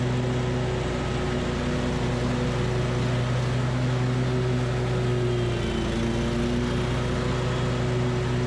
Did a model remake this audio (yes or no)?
no